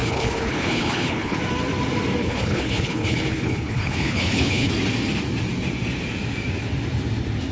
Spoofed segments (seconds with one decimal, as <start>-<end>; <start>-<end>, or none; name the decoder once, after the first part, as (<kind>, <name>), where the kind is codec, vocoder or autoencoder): 0.0-1.4 (codec, HILCodec); 2.2-4.7